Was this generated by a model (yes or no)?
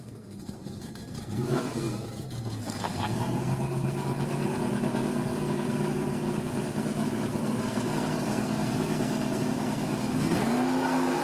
yes